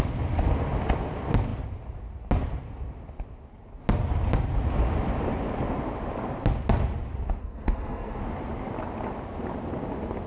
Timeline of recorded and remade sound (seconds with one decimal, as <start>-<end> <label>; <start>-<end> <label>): 0.0-7.4 recorded; 7.4-8.2 remade; 8.2-10.3 recorded